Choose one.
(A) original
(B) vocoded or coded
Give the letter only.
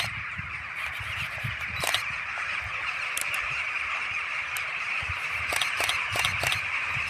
B